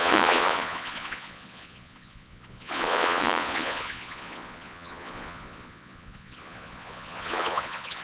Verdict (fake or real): fake